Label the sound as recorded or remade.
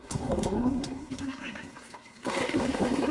remade